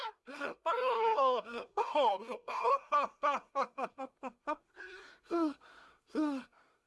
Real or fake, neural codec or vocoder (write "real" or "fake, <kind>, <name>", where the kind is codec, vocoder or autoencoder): fake, codec, SNAC